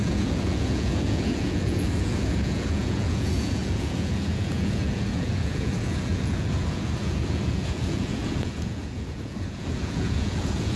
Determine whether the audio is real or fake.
fake